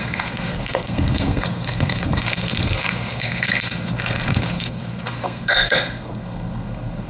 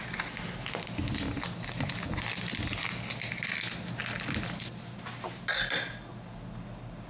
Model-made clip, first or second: first